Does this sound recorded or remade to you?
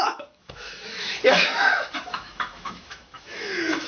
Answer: remade